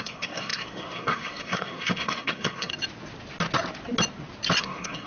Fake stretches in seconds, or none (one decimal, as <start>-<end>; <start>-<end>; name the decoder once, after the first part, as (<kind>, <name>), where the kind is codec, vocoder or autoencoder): 0.0-2.7 (codec, SNAC); 4.6-5.1